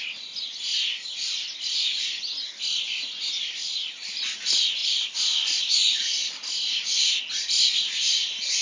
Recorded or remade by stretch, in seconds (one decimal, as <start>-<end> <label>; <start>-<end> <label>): 0.0-4.8 recorded; 4.8-5.6 remade; 5.6-8.6 recorded

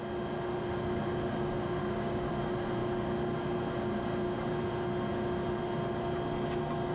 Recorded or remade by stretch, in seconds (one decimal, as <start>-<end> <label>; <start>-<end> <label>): 0.0-1.8 recorded; 1.8-2.3 remade; 2.3-6.9 recorded

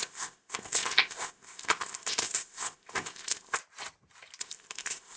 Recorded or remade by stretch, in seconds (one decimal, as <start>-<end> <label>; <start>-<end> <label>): 0.0-3.6 remade; 3.6-4.4 recorded; 4.4-5.2 remade

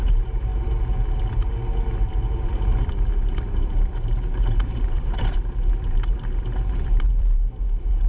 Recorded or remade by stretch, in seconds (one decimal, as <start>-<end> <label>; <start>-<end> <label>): 0.0-0.5 remade; 0.5-2.1 recorded; 2.1-8.1 remade

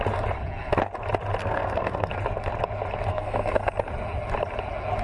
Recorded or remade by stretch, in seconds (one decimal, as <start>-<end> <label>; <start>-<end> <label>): 0.0-1.4 recorded; 1.4-2.1 remade; 2.1-3.1 recorded; 3.1-3.7 remade; 3.7-5.0 recorded